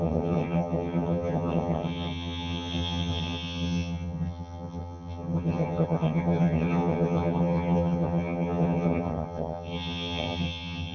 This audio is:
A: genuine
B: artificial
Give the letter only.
B